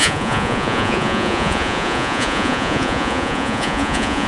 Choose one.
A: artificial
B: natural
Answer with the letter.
A